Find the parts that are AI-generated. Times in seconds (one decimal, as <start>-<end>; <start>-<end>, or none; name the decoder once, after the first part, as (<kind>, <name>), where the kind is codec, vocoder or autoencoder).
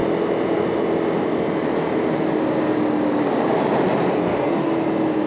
4.1-4.7 (codec, DAC)